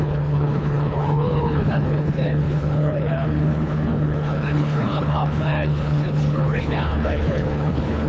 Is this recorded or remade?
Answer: remade